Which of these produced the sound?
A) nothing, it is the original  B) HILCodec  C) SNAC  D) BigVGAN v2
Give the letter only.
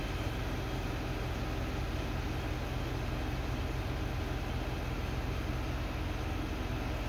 A